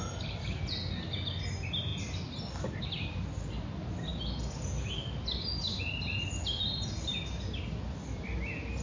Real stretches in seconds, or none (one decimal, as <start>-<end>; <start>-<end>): 0.0-8.8